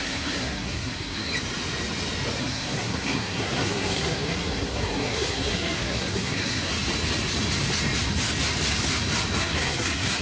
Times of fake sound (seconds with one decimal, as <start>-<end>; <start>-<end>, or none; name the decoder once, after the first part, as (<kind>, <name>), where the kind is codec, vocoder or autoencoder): 0.0-1.3 (codec, SNAC); 2.4-6.7; 9.4-10.2